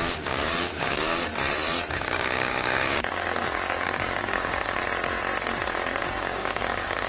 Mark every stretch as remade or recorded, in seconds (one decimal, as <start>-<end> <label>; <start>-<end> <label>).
0.0-1.3 remade; 1.3-1.9 recorded; 1.9-4.8 remade; 4.8-6.0 recorded; 6.0-7.1 remade